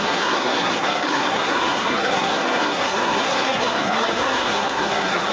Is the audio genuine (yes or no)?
no